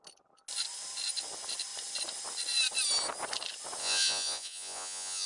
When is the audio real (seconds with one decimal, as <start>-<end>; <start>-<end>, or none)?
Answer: 0.0-3.8